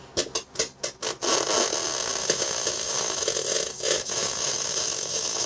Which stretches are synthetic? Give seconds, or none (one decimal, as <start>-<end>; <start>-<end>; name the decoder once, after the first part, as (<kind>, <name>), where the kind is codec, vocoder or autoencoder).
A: 2.2-5.5 (autoencoder, DAC-VAE)